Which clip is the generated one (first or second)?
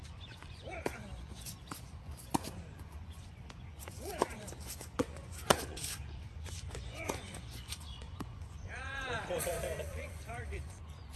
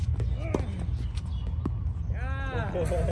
first